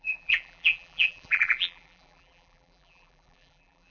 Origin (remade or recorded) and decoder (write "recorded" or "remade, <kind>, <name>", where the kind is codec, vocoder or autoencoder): remade, vocoder, BigVGAN v2